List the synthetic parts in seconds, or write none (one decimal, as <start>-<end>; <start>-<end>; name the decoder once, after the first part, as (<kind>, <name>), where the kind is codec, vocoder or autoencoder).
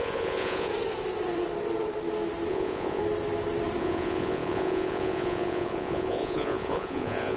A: 0.0-0.7 (vocoder, Vocos); 2.5-3.0; 3.8-7.4